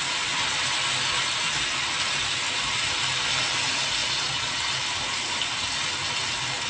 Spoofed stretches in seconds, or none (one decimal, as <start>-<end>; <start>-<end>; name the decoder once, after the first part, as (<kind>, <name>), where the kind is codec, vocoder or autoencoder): 4.0-4.7 (vocoder, Vocos)